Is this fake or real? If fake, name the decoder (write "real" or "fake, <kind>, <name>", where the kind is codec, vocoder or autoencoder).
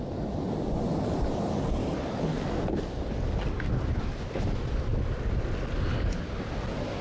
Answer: real